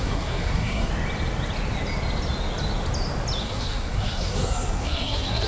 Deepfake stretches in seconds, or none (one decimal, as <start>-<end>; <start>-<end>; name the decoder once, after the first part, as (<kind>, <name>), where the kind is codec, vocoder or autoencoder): 0.0-0.9 (codec, SNAC); 3.4-5.5